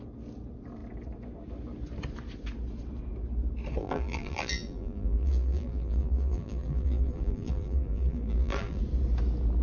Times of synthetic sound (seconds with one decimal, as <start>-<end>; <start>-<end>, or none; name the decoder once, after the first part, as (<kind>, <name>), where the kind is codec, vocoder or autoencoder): 3.8-8.8 (vocoder, BigVGAN v2)